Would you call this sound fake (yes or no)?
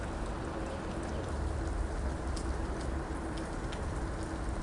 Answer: no